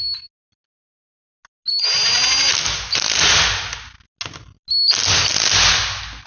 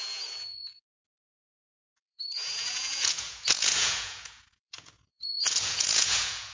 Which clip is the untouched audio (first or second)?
first